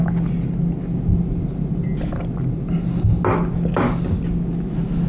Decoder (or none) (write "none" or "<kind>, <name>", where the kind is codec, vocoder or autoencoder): none